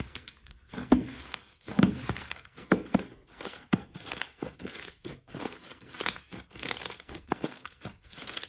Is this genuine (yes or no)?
no